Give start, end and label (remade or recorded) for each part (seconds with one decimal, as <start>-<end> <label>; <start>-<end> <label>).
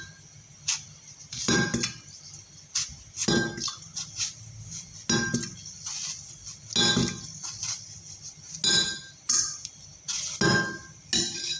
0.0-11.6 recorded